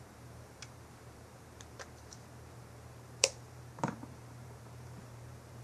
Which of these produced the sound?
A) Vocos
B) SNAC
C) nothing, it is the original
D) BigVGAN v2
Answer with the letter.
D